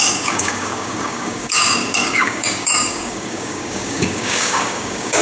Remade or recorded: remade